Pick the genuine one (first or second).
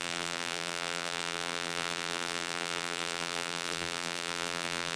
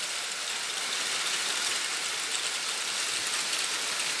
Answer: second